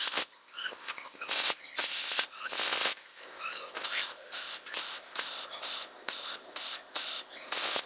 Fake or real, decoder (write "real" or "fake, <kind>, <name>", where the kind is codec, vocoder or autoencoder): fake, codec, ZipCodec